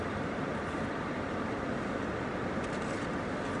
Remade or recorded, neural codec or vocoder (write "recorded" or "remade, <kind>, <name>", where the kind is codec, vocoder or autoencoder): remade, vocoder, BigVGAN v2